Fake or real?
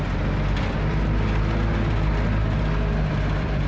fake